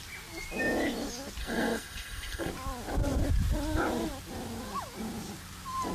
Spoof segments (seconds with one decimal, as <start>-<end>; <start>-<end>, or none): 1.4-2.5